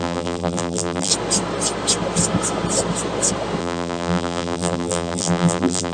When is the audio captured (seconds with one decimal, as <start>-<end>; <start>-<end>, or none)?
1.1-3.6